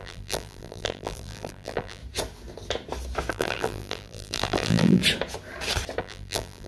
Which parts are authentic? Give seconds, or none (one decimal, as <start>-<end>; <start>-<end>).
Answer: 2.0-3.3; 5.0-6.0